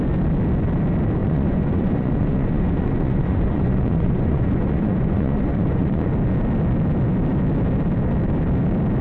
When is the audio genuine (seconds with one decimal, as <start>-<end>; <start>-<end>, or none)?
0.0-1.2; 6.1-9.0